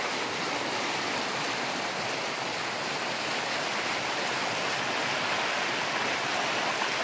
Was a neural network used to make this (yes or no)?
no